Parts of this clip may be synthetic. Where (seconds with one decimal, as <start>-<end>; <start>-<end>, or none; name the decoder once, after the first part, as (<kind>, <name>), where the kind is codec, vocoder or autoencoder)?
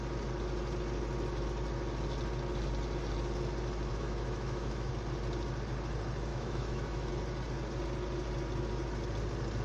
3.9-4.9 (autoencoder, DAC-VAE); 6.3-7.1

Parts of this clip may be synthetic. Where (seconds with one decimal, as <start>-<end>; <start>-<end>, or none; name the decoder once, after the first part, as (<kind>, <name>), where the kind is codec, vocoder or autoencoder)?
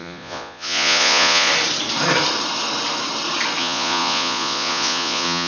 0.0-1.5 (vocoder, Vocos); 3.6-5.5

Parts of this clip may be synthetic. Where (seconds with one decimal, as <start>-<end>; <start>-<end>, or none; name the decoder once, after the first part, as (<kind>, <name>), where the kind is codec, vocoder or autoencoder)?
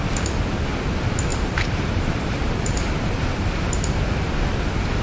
1.3-3.5 (vocoder, BigVGAN v2)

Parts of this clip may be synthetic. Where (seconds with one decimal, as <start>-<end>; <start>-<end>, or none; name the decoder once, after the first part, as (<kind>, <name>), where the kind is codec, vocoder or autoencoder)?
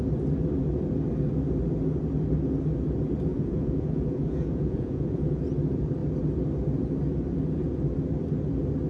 3.3-5.4 (vocoder, Vocos)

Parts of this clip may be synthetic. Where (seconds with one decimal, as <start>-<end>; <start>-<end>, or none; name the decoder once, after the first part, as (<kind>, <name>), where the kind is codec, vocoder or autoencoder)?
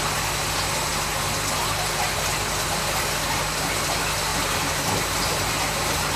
4.3-4.9 (vocoder, BigVGAN v2)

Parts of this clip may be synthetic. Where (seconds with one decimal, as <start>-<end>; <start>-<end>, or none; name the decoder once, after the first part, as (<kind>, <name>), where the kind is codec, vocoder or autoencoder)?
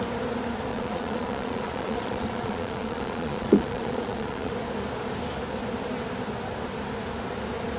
0.7-4.5 (vocoder, Vocos)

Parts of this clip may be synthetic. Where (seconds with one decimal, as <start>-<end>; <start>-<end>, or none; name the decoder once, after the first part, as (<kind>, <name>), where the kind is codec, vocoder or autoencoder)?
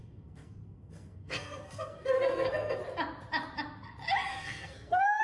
0.0-2.8 (codec, SNAC); 4.3-5.2